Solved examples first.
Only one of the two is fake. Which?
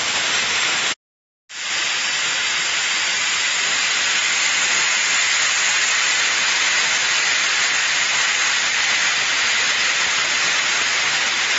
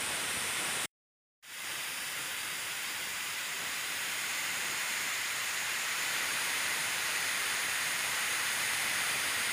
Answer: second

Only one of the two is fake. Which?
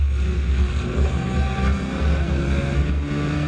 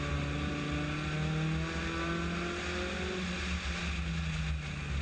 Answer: first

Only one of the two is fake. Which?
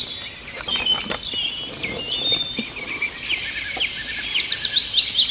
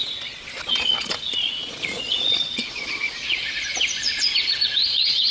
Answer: second